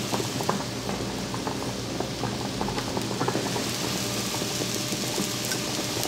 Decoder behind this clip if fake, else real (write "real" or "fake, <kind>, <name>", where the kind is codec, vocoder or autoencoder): real